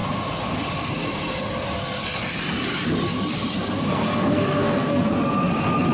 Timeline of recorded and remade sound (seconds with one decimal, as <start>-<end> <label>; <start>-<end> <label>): 0.0-3.9 recorded; 3.9-5.1 remade; 5.1-5.9 recorded